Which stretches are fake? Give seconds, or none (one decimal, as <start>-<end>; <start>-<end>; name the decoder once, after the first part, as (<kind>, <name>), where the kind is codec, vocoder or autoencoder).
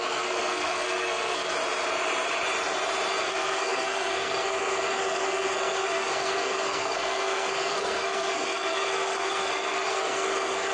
0.0-1.5 (codec, SNAC); 3.2-10.7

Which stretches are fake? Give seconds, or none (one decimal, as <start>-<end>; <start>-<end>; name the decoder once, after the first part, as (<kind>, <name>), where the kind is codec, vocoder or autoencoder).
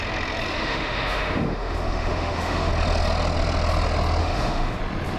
0.5-2.7 (autoencoder, DAC-VAE); 4.2-4.8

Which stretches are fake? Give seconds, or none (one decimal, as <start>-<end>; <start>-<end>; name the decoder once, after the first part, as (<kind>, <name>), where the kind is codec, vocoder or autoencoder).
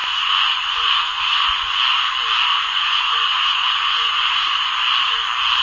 0.0-1.8 (vocoder, Vocos); 2.5-4.7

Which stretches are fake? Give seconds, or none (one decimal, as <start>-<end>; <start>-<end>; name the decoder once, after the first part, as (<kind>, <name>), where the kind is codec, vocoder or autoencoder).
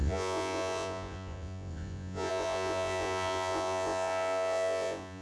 0.0-5.2 (vocoder, Vocos)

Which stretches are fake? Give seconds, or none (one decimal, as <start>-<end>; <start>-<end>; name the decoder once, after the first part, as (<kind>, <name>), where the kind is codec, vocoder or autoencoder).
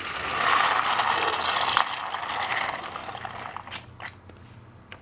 none